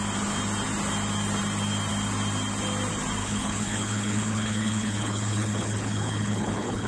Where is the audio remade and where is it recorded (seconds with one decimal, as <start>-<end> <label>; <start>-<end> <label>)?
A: 0.0-3.2 recorded; 3.2-6.9 remade